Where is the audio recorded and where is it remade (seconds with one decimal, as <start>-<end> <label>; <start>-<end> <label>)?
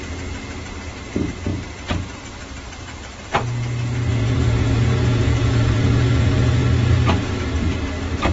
0.0-4.1 recorded; 4.1-6.6 remade; 6.6-8.3 recorded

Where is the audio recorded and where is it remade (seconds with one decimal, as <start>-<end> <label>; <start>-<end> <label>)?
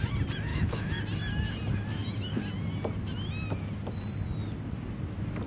0.0-0.5 recorded; 0.5-1.0 remade; 1.0-5.5 recorded